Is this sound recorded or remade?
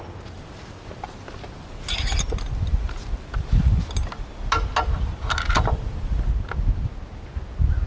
recorded